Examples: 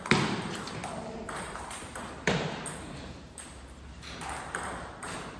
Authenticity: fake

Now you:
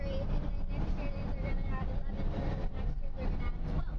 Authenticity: fake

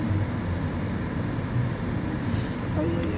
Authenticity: real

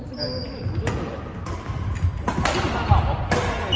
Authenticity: real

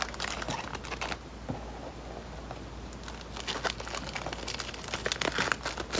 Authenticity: real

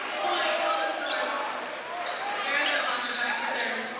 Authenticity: real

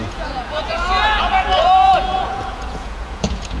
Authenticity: fake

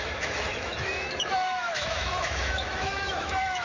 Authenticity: fake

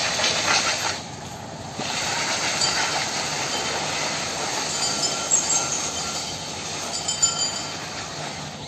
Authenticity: real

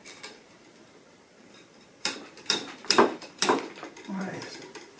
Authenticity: fake